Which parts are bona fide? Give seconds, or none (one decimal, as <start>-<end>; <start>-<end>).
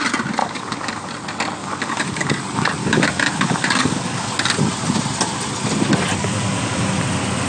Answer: 0.0-0.4; 1.1-1.6; 2.3-2.8; 4.3-6.2; 7.0-7.5